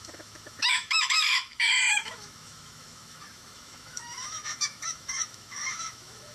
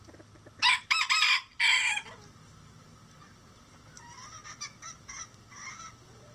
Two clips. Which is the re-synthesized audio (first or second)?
first